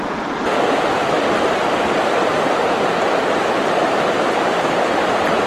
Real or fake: real